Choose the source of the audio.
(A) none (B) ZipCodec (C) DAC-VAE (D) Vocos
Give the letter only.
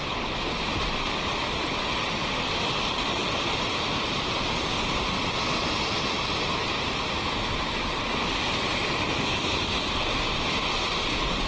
A